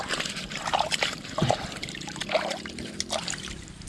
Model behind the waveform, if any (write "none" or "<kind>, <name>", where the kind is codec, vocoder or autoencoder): vocoder, BigVGAN v2